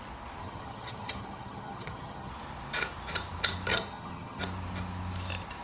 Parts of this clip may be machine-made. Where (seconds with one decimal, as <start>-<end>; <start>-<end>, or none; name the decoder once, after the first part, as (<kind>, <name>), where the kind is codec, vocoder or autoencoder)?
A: 0.4-2.3 (vocoder, HiFi-GAN); 3.7-4.4